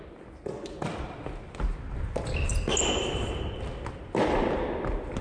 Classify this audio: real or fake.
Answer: real